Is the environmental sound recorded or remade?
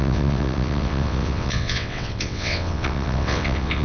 remade